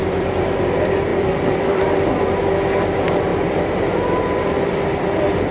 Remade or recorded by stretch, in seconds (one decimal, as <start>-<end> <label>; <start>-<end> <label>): 0.0-0.6 remade; 0.6-1.1 recorded; 1.1-1.9 remade; 1.9-3.3 recorded; 3.3-4.2 remade; 4.2-5.5 recorded